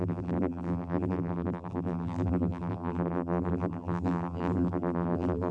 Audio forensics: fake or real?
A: fake